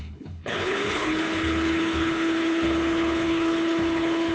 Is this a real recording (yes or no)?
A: no